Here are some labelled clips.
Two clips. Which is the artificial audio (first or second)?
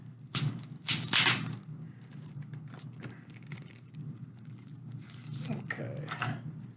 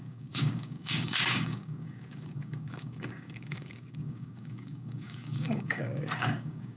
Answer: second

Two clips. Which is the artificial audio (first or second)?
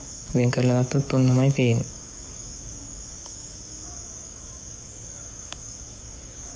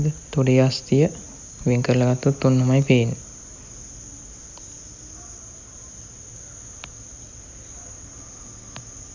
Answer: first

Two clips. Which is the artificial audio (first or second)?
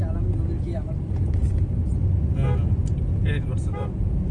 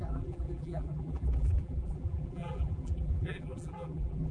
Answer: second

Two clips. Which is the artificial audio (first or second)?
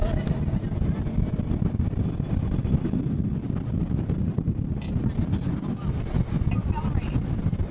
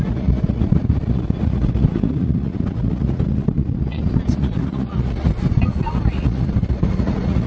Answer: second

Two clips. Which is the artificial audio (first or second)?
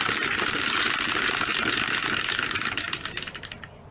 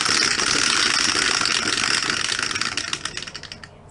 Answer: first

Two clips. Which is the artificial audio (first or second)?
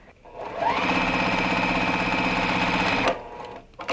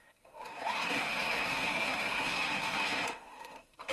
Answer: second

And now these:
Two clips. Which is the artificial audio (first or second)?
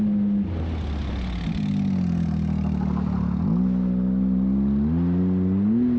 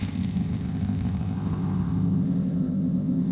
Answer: second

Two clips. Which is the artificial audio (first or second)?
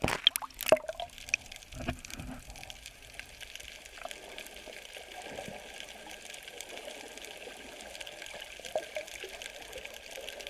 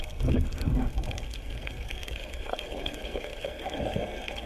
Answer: second